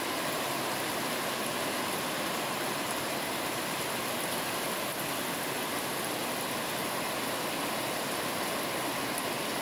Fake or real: real